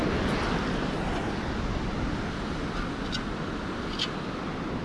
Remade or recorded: recorded